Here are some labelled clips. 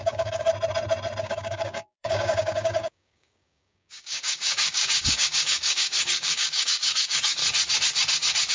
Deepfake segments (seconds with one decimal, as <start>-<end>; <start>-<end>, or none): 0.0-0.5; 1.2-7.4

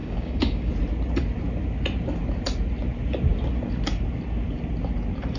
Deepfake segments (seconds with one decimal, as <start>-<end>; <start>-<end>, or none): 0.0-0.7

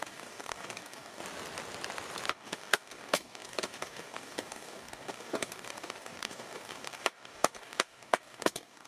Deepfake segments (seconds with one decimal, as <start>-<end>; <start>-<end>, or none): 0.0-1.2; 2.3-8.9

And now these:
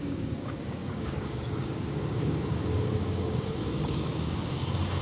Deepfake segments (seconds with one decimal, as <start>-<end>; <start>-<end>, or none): 0.0-5.0

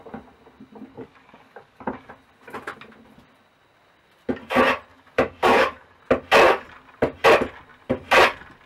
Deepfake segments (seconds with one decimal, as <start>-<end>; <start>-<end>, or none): 0.9-2.1; 4.9-6.0

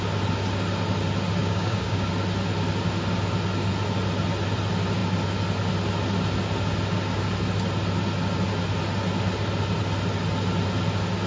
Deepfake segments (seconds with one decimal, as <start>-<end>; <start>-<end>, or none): 1.4-2.1